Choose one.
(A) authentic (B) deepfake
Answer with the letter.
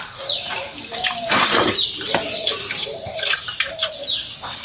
B